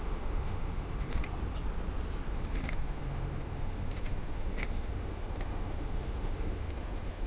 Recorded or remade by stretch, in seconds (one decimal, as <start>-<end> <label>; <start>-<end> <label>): 0.0-1.2 remade; 1.2-2.3 recorded; 2.3-7.3 remade